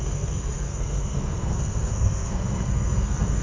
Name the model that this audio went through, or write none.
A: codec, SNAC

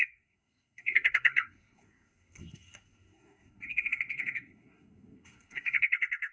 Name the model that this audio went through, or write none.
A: codec, SNAC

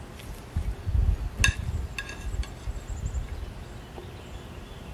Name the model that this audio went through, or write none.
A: none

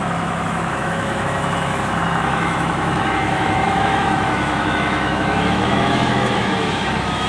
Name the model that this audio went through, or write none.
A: autoencoder, DAC-VAE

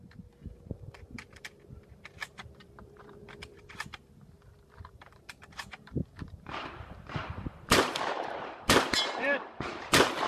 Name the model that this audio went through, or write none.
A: vocoder, BigVGAN v2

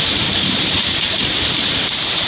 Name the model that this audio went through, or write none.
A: vocoder, BigVGAN v2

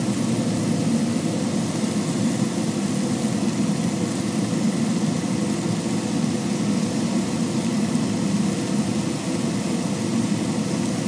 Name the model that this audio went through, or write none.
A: none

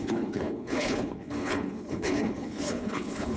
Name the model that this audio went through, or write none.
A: codec, HILCodec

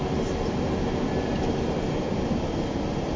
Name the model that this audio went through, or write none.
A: none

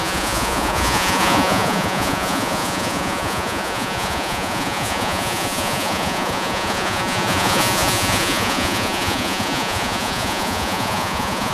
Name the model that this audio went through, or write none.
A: vocoder, Vocos